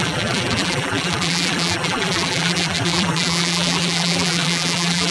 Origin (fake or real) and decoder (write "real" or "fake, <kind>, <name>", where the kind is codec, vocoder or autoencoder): fake, vocoder, BigVGAN v2